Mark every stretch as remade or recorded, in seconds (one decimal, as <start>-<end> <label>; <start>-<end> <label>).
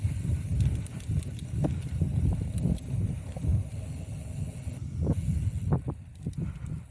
0.0-6.9 recorded